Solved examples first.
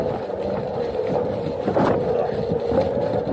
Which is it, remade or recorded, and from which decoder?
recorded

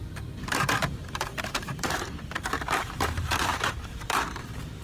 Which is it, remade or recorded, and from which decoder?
remade, vocoder, BigVGAN v2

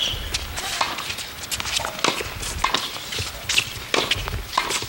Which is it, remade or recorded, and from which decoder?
recorded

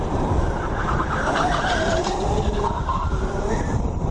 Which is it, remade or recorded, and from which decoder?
remade, vocoder, BigVGAN v2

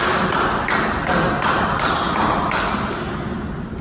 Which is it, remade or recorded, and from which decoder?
recorded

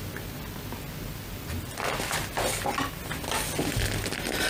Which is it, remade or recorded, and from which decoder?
recorded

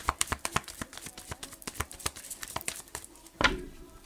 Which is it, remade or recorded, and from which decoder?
remade, vocoder, BigVGAN v2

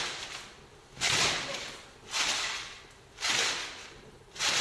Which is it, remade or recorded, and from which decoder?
recorded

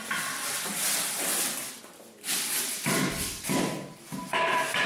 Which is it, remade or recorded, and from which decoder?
recorded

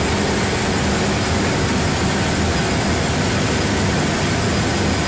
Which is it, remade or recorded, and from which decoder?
recorded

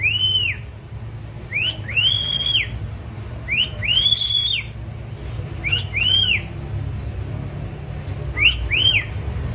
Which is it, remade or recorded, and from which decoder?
recorded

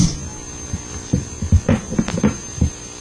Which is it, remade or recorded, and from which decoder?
remade, vocoder, BigVGAN v2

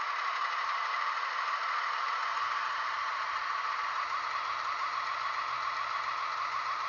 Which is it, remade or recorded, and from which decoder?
remade, vocoder, BigVGAN v2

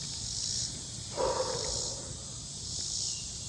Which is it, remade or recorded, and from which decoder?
recorded